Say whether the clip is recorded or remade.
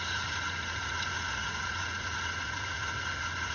remade